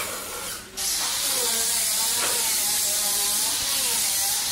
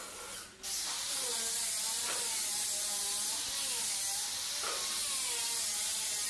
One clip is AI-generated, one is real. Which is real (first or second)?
second